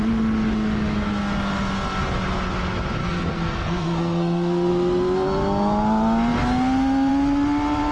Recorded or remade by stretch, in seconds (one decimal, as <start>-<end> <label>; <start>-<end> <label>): 0.0-3.0 recorded; 3.0-4.7 remade; 4.7-7.9 recorded